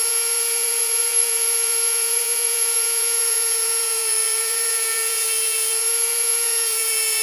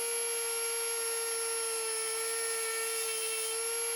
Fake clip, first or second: first